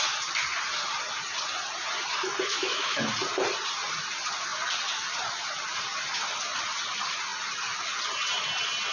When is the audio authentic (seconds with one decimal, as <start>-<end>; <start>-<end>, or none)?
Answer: 0.0-2.5; 3.0-8.9